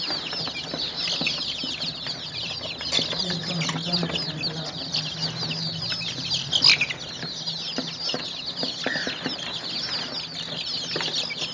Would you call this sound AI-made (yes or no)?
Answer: no